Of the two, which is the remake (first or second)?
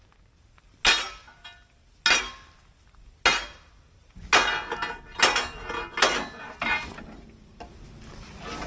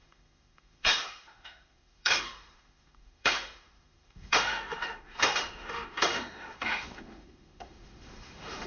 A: second